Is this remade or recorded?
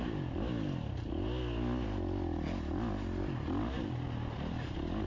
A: recorded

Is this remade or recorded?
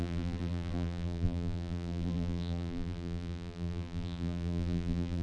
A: remade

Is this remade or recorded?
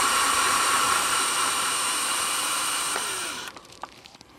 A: remade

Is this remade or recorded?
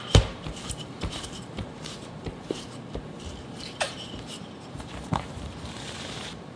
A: remade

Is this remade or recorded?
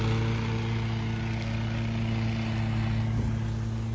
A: recorded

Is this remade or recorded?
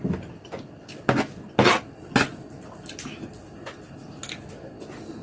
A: recorded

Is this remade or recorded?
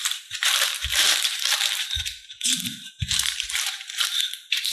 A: remade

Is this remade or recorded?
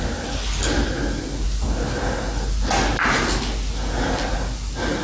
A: recorded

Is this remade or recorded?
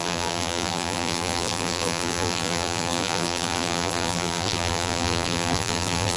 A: remade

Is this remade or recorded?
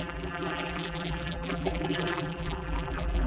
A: remade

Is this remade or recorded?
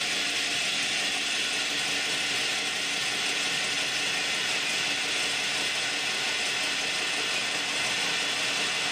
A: recorded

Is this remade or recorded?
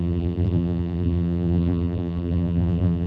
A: remade